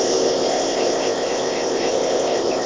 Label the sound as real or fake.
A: fake